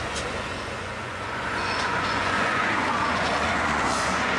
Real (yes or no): no